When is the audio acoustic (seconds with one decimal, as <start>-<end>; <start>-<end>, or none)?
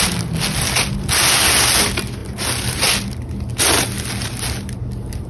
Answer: 0.0-5.3